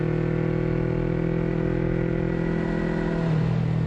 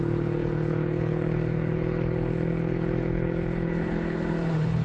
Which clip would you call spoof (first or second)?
second